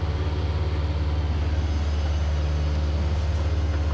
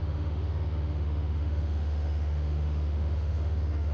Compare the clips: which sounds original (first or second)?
first